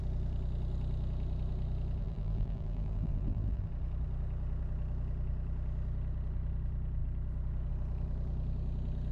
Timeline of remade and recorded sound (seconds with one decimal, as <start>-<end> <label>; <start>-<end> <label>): 0.0-2.0 recorded; 2.0-3.7 remade; 3.7-9.1 recorded